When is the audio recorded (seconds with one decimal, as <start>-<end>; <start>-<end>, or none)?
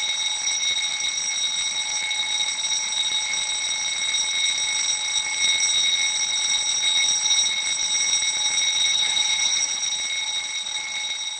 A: 0.0-8.9; 9.8-11.4